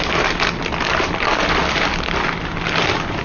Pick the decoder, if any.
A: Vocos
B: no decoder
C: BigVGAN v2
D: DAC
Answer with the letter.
B